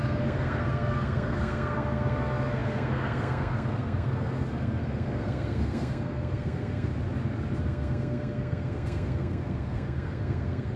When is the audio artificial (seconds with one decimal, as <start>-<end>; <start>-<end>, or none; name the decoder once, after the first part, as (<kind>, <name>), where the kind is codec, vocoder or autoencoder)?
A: 0.0-6.9 (codec, SNAC); 7.6-10.8